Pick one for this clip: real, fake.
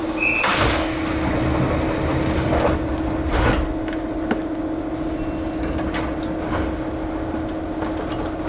real